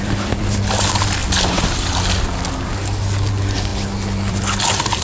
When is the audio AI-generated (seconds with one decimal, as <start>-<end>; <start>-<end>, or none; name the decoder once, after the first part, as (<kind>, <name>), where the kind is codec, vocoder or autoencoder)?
0.0-1.2 (vocoder, BigVGAN v2); 3.3-3.7; 4.3-5.0